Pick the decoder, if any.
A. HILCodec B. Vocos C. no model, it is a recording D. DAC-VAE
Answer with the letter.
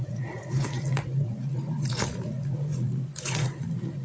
B